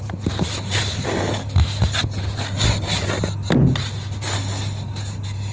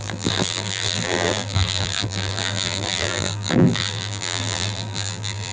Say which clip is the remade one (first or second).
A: second